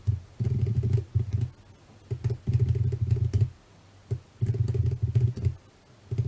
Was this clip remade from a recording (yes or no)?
no